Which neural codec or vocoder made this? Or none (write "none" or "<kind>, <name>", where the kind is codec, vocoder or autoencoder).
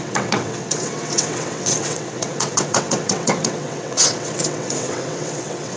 vocoder, WaveNeXt